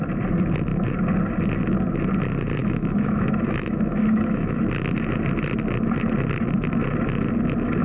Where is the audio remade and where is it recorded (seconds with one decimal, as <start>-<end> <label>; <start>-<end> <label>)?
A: 0.0-2.6 recorded; 2.6-4.6 remade; 4.6-7.8 recorded